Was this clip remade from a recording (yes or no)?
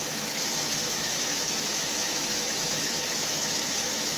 yes